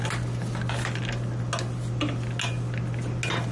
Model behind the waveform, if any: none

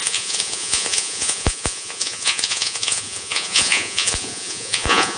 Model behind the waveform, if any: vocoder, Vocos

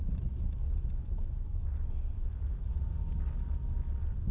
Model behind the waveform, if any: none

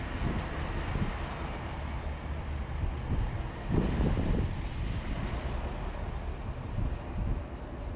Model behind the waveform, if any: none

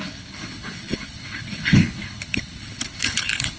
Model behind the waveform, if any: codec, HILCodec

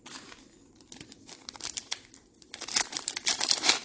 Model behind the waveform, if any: none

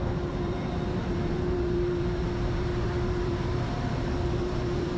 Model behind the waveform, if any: vocoder, BigVGAN v2